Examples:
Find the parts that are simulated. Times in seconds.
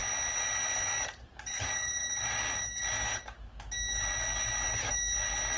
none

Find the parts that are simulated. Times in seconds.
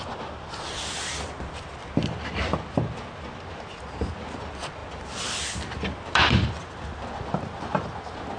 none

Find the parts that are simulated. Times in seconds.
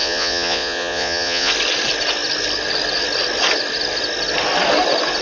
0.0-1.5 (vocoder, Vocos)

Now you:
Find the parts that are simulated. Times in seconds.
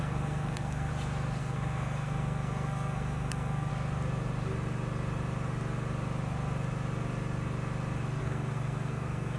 0.0-0.9 (codec, SNAC); 1.4-3.7; 8.2-9.4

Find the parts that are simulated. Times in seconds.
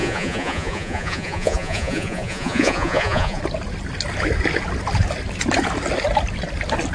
0.0-3.4 (vocoder, Vocos)